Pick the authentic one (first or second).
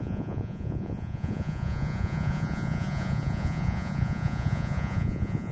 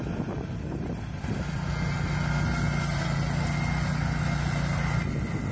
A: second